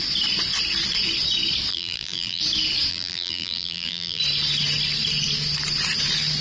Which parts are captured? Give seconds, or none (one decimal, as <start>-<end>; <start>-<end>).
0.0-1.7; 2.4-2.9; 4.2-6.4